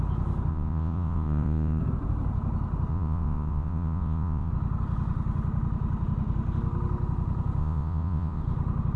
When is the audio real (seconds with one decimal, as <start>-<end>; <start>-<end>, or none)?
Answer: 0.0-0.5; 1.8-2.9; 4.5-7.6; 8.4-9.0